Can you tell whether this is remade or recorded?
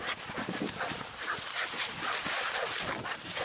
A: recorded